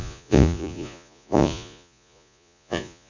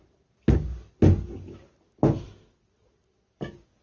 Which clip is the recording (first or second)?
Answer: second